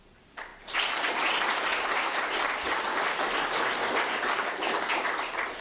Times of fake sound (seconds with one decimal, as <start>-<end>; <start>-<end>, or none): none